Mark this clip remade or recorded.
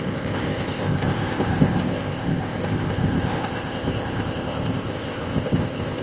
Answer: remade